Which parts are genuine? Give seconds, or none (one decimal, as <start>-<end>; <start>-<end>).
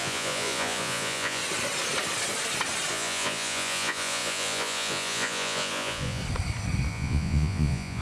1.4-2.9; 6.2-6.9